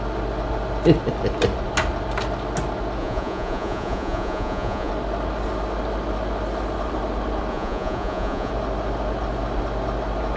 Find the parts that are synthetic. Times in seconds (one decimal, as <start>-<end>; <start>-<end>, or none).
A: 3.0-4.9; 7.5-8.5